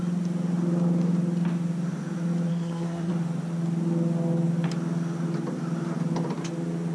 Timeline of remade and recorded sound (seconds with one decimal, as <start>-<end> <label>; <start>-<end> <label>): 0.0-2.5 recorded; 2.5-3.1 remade; 3.1-6.9 recorded